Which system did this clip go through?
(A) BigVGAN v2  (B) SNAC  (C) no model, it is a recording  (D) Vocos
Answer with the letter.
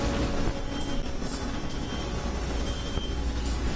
C